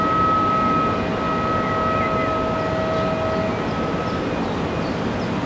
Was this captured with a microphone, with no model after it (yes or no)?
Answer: yes